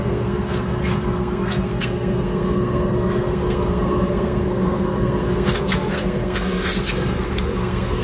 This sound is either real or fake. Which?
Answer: fake